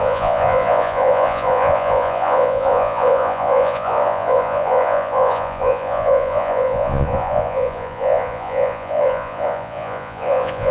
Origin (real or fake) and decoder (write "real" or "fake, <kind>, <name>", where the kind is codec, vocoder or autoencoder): fake, vocoder, Vocos